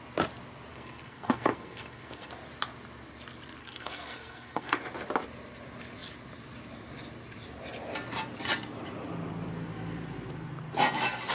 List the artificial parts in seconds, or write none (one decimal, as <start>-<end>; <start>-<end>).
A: 0.7-2.3; 3.6-4.8